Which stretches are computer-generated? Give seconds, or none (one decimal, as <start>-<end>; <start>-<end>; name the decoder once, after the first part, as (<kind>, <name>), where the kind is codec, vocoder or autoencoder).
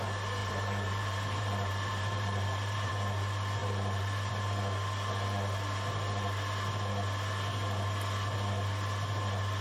0.4-2.9 (vocoder, BigVGAN v2); 3.6-4.3